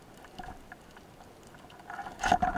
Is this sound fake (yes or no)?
no